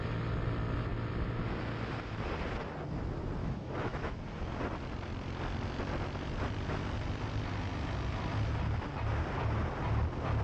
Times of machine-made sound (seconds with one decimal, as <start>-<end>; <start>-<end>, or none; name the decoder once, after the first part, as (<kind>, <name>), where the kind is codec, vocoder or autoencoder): 3.4-4.2 (autoencoder, DAC-VAE)